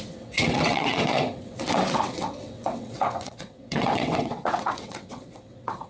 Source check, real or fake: fake